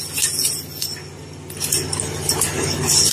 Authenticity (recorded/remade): recorded